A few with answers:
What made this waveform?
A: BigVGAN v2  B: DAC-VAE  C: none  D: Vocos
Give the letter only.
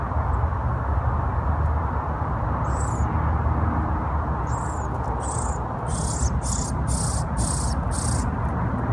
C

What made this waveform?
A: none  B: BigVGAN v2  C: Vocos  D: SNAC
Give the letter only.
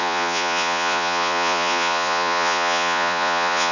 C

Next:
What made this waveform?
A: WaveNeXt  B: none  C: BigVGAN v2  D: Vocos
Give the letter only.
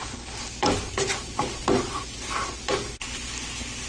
B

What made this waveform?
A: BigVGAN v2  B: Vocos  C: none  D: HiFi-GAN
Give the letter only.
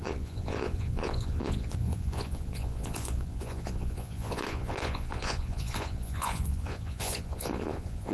B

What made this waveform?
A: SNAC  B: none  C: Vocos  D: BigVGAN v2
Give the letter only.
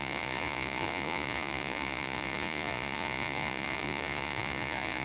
C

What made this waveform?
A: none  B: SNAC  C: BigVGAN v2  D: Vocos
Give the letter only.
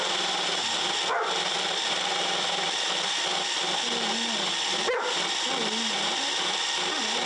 A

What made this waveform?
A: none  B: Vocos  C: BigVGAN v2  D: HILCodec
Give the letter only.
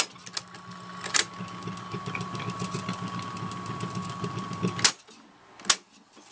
A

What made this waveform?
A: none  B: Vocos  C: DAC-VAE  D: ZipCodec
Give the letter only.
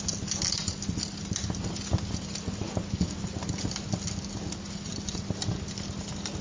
A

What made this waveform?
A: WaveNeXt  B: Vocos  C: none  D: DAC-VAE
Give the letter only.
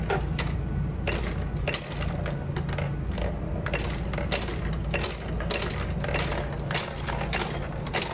C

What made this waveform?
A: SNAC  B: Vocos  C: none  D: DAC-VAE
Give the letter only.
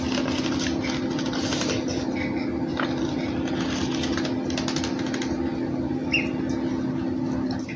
C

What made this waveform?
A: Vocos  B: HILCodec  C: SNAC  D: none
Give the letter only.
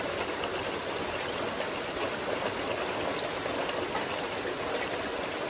D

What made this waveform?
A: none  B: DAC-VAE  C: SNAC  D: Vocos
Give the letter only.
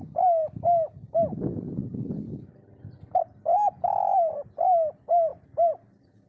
A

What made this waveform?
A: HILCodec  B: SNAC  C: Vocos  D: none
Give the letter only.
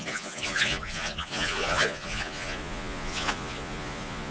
C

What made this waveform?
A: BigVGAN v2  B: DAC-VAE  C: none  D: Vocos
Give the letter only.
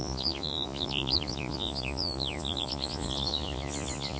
D